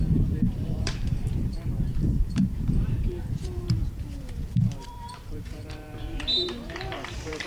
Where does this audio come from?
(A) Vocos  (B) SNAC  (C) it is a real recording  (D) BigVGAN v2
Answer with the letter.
D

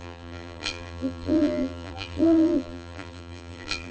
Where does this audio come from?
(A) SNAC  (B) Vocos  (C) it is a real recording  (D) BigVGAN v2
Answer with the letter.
D